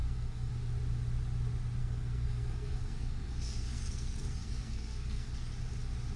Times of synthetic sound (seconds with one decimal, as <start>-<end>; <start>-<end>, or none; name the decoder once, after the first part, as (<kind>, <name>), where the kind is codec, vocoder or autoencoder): 0.0-0.5 (codec, SNAC); 1.8-5.5